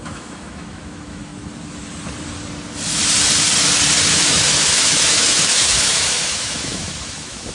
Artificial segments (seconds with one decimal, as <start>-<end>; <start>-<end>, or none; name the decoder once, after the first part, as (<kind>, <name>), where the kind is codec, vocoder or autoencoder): 0.0-1.3 (autoencoder, DAC-VAE); 4.1-7.5